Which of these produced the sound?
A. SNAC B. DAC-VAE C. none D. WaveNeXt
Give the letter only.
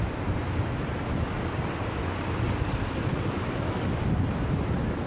C